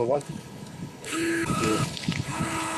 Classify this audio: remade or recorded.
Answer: remade